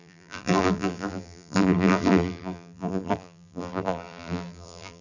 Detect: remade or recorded remade